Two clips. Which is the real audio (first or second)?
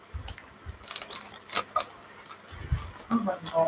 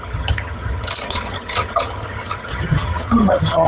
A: first